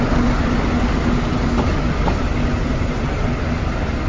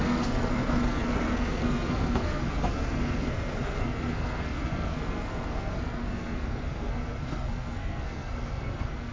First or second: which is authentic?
first